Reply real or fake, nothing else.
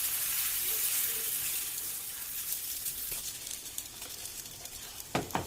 fake